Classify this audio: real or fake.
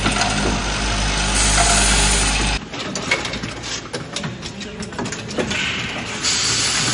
real